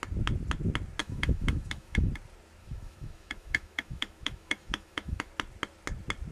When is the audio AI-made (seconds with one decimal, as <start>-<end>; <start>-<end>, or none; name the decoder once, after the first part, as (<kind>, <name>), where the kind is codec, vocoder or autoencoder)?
1.0-2.1 (autoencoder, DAC-VAE); 2.6-5.3